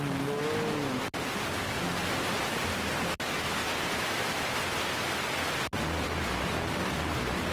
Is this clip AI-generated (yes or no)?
no